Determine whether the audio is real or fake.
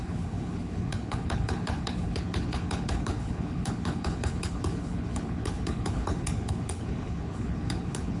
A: fake